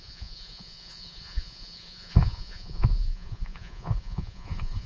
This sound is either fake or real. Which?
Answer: fake